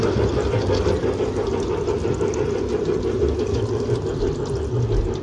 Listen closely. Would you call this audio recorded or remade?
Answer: recorded